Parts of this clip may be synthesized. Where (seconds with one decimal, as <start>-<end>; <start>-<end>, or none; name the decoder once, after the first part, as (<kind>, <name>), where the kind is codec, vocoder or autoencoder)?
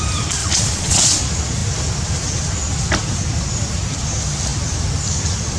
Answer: 0.4-1.2 (vocoder, Vocos)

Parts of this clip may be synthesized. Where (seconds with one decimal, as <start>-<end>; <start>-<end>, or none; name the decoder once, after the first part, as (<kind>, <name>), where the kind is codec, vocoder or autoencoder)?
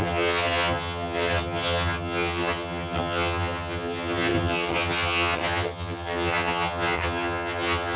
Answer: 0.0-8.0 (vocoder, HiFi-GAN)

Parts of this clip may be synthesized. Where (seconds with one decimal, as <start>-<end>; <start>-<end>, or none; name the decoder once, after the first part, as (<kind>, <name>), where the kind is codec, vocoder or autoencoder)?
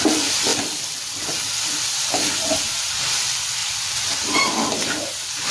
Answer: none